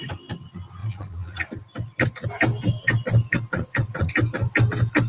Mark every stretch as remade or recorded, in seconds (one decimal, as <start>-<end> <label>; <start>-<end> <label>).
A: 0.0-0.8 recorded; 0.8-1.5 remade; 1.5-3.5 recorded; 3.5-4.1 remade; 4.1-5.1 recorded